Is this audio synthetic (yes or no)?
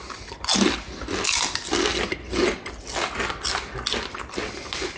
no